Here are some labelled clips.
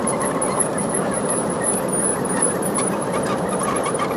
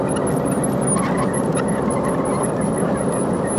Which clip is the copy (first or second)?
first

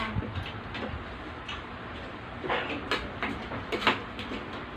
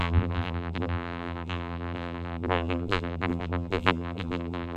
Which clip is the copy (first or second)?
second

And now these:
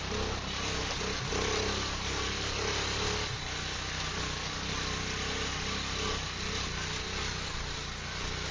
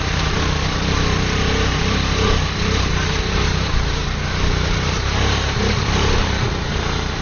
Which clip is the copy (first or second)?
second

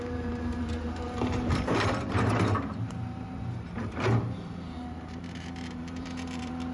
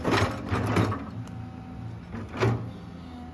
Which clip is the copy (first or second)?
first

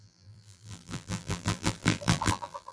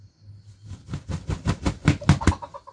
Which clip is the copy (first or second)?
first